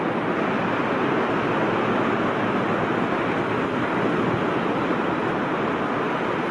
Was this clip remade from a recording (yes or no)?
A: no